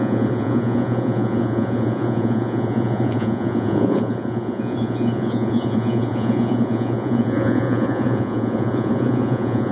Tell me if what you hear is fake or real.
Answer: fake